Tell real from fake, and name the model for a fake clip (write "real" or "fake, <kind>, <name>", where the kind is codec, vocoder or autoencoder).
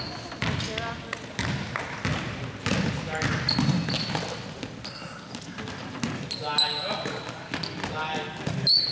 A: real